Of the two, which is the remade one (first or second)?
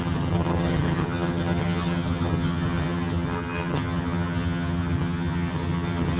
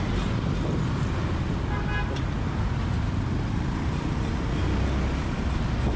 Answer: first